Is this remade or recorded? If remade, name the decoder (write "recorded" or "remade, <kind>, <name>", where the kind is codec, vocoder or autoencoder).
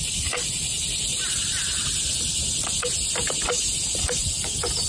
recorded